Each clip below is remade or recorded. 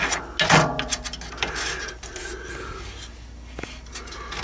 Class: recorded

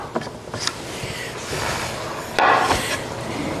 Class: recorded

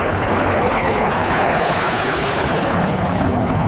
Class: remade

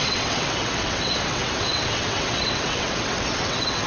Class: remade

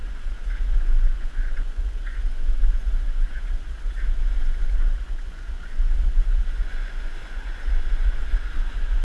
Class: remade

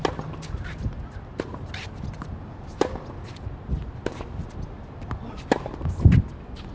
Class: recorded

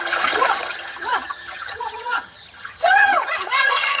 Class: remade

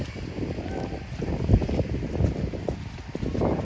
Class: recorded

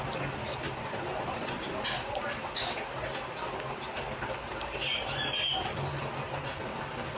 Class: recorded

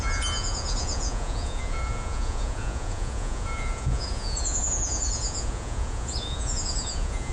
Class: remade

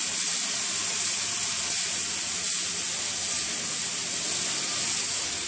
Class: recorded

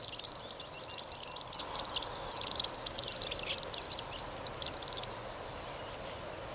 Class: recorded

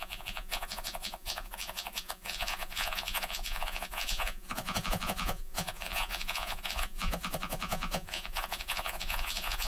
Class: remade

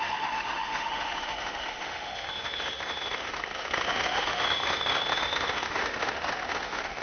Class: remade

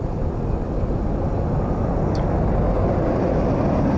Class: recorded